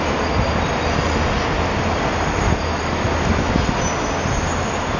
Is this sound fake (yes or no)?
no